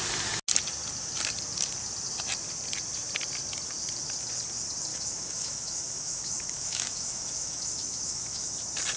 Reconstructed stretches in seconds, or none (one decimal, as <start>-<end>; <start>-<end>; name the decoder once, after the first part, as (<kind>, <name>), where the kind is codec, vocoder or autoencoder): 4.9-8.5 (autoencoder, DAC-VAE)